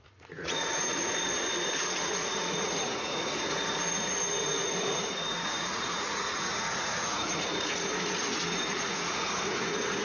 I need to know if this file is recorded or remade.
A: remade